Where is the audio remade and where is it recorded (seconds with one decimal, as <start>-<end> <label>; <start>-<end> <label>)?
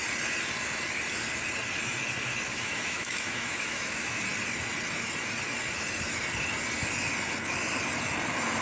0.0-2.5 recorded; 2.5-4.2 remade; 4.2-8.6 recorded